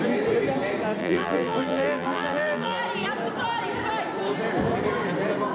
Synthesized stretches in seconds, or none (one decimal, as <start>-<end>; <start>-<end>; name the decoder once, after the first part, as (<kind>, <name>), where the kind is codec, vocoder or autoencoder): 1.0-2.8 (vocoder, BigVGAN v2)